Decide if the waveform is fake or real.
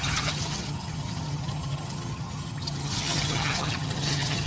fake